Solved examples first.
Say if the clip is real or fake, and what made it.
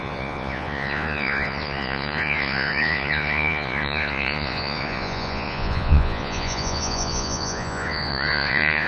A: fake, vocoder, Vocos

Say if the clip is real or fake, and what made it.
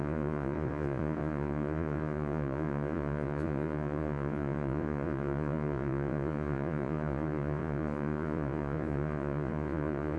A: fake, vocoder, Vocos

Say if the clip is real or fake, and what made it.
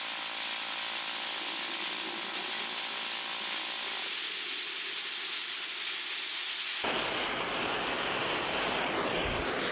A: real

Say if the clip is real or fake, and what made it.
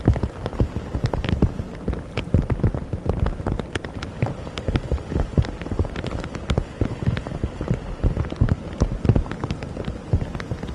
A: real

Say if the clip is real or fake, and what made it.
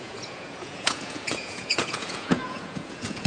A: fake, vocoder, Vocos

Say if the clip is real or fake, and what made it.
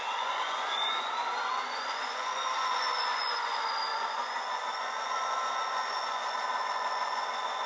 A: fake, vocoder, Vocos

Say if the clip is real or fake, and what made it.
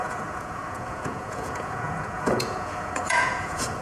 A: fake, vocoder, Vocos